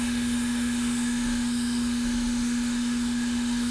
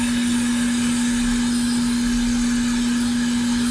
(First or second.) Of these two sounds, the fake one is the first